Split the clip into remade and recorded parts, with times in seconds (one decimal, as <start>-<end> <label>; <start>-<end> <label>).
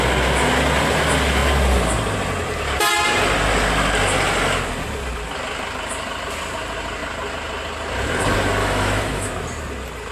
0.0-8.6 recorded; 8.6-9.3 remade; 9.3-10.1 recorded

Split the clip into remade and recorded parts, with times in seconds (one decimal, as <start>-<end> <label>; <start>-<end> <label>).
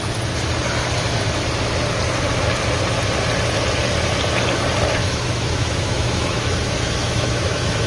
0.0-5.0 recorded; 5.0-7.9 remade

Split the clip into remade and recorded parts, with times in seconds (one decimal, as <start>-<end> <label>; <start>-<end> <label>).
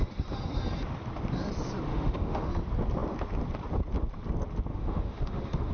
0.0-1.9 recorded; 1.9-2.5 remade; 2.5-4.7 recorded; 4.7-5.7 remade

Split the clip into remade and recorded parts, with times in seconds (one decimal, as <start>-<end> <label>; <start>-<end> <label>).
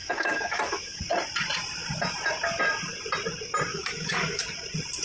0.0-1.0 remade; 1.0-3.7 recorded; 3.7-4.4 remade; 4.4-5.0 recorded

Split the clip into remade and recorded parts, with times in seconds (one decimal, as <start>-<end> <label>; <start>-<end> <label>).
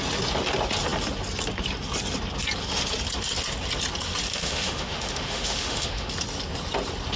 0.0-4.3 recorded; 4.3-6.1 remade; 6.1-7.2 recorded